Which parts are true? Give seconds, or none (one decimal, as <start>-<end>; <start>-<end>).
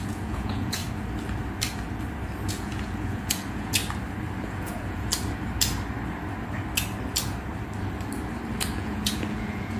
0.8-2.5; 3.8-4.4; 5.1-8.7